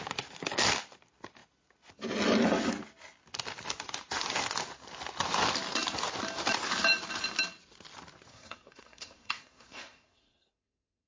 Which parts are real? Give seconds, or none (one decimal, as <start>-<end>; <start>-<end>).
0.0-8.3